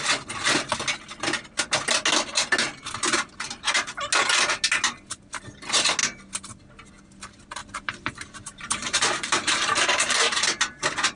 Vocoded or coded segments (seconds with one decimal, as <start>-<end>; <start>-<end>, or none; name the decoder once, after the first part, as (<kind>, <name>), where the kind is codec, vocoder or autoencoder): 2.7-3.3 (vocoder, BigVGAN v2); 7.6-10.2